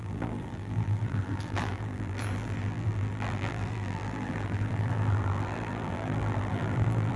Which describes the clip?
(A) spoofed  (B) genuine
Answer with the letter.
A